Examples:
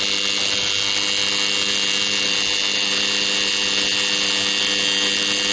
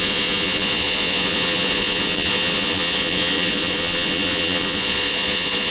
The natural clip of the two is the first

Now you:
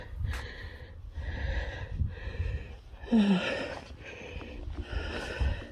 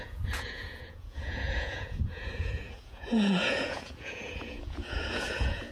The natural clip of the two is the first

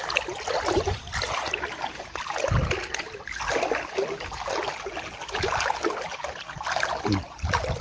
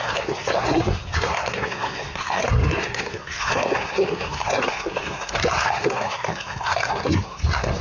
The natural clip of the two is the first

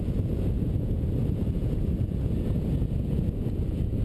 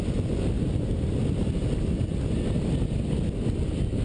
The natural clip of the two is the second